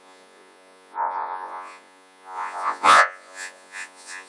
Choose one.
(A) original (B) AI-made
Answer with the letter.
B